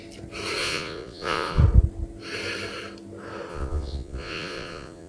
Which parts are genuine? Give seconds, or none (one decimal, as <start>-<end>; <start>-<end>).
0.0-0.6; 1.6-3.5